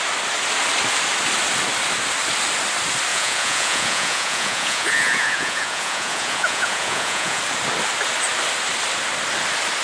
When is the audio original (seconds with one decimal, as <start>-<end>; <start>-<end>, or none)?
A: 0.0-3.1; 7.4-9.8